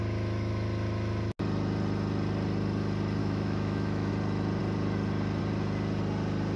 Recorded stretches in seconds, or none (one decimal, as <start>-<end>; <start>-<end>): 0.0-3.2; 4.1-6.6